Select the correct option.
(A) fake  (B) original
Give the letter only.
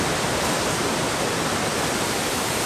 B